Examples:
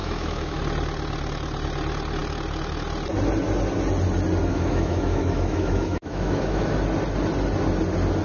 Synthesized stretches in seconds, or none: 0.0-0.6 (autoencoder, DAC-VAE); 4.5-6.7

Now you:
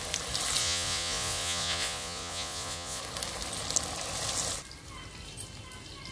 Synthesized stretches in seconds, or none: 0.6-3.0 (vocoder, Vocos)

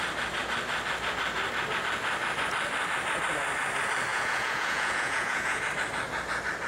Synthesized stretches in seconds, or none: 4.1-5.6 (vocoder, Vocos)